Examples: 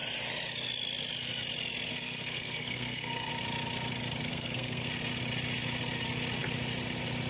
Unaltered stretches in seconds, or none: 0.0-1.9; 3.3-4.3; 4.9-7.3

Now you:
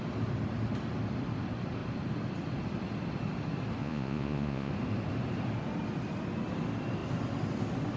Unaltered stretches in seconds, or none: 0.0-3.8; 4.7-8.0

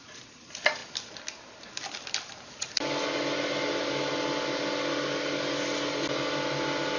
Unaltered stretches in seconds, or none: 0.0-7.0

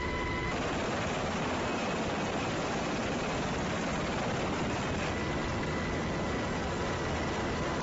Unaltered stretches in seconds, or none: 0.0-7.8

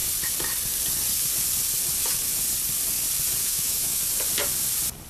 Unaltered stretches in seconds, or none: 0.0-3.4; 4.0-5.1